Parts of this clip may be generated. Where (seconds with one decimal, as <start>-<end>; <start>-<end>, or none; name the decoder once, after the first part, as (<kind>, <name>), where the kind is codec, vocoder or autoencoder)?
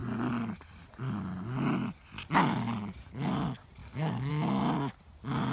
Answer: 3.8-4.3 (codec, DAC)